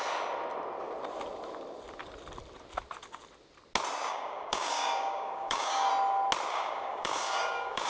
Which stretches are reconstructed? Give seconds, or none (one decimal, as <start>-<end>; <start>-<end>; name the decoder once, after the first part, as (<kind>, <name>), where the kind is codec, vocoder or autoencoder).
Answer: 4.1-5.9 (codec, DAC); 6.5-7.9